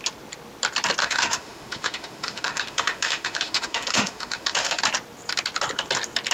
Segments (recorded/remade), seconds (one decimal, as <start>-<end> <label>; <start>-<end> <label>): 0.0-1.0 recorded; 1.0-4.8 remade; 4.8-6.3 recorded